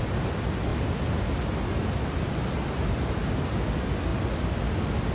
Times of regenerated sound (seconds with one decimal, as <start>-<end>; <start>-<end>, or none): none